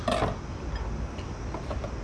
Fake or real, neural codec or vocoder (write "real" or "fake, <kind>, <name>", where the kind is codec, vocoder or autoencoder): real